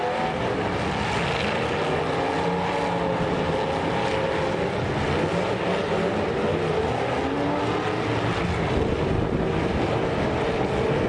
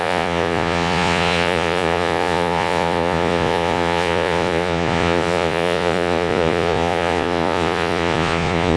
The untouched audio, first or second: first